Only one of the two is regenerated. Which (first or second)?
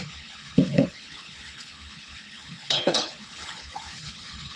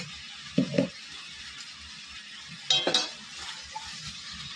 first